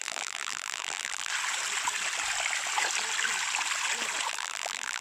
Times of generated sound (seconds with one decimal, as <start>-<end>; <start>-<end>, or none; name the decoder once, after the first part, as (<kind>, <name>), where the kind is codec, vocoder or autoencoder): 0.0-1.3 (vocoder, BigVGAN v2); 4.3-5.0